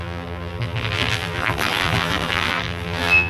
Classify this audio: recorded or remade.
remade